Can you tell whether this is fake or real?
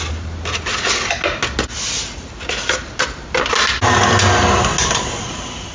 real